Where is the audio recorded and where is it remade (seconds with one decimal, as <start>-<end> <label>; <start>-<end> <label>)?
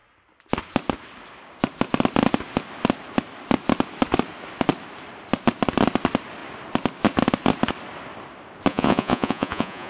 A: 0.0-8.7 recorded; 8.7-9.9 remade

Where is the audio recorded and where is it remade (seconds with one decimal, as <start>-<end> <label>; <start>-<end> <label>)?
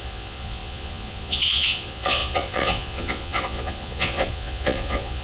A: 0.0-5.2 remade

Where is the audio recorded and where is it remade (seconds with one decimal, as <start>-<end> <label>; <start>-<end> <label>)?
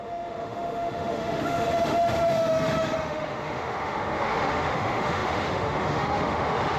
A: 0.0-6.8 remade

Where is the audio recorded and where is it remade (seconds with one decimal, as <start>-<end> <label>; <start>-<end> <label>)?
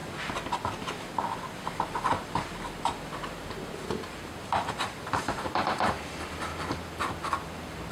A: 0.0-7.9 recorded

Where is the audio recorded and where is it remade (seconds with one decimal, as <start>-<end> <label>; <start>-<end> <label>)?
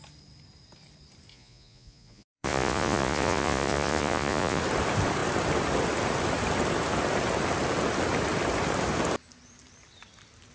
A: 0.0-1.3 recorded; 1.3-4.6 remade; 4.6-10.5 recorded